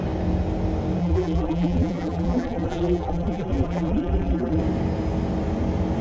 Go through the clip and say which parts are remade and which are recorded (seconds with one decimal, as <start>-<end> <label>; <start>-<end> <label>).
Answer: 0.0-1.0 recorded; 1.0-4.6 remade; 4.6-6.0 recorded